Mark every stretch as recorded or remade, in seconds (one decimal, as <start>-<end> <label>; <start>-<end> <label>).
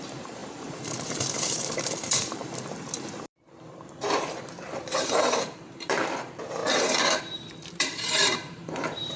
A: 0.0-9.2 remade